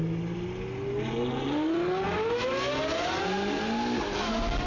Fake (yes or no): no